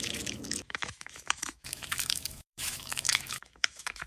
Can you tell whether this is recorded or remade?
remade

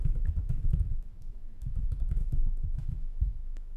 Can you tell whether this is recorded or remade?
remade